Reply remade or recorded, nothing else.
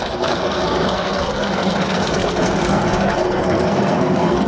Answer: remade